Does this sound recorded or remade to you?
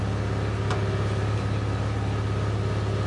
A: recorded